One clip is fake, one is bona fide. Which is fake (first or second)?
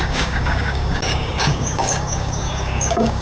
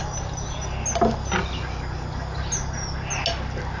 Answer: first